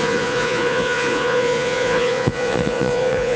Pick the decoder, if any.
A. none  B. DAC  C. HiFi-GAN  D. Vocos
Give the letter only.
D